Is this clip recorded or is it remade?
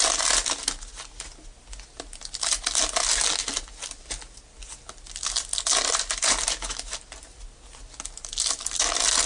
recorded